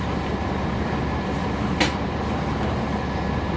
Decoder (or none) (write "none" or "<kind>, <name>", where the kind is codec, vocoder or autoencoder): none